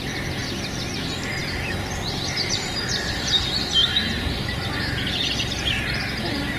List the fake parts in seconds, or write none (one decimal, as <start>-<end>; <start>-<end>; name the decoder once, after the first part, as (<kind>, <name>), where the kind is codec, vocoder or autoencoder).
1.4-3.4 (vocoder, BigVGAN v2); 3.8-5.3

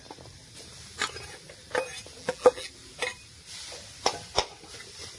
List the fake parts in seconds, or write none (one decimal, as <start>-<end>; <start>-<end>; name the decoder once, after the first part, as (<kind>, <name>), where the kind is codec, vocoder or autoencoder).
2.2-2.7 (vocoder, BigVGAN v2)

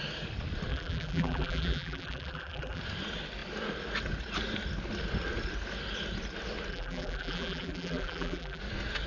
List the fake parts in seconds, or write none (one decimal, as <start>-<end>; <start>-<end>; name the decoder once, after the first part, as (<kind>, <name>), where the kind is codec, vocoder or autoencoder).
0.7-2.8 (vocoder, BigVGAN v2); 6.7-8.6

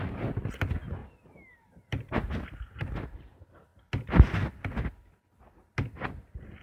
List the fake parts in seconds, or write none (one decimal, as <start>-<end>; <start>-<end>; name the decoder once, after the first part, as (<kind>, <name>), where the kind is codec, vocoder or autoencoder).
1.0-2.3 (vocoder, BigVGAN v2)

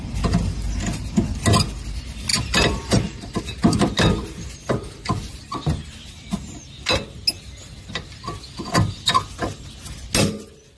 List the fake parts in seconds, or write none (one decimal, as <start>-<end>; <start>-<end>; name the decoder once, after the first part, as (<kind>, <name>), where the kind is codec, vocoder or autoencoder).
2.3-3.4 (vocoder, BigVGAN v2)

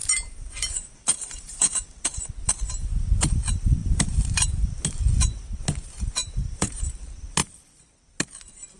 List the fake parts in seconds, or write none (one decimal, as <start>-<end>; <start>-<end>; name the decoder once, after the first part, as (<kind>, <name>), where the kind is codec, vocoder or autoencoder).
0.0-2.2 (vocoder, BigVGAN v2); 3.8-4.7; 6.2-6.8

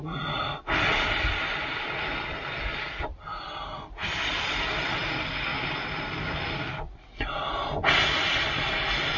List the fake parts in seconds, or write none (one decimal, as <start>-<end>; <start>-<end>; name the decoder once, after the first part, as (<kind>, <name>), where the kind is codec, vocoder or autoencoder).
none